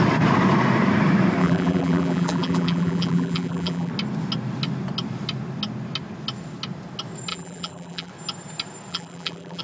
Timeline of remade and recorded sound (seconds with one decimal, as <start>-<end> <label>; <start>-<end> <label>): 0.0-1.4 recorded; 1.4-3.9 remade; 3.9-7.3 recorded; 7.3-8.1 remade; 8.1-8.9 recorded; 8.9-9.6 remade